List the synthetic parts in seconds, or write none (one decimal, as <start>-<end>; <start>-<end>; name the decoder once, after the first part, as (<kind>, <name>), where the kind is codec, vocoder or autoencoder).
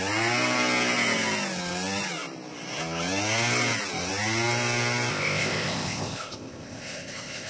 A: 5.1-7.5 (codec, ZipCodec)